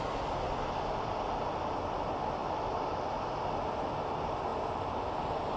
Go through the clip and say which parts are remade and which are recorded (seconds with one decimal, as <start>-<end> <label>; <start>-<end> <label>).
0.0-5.6 recorded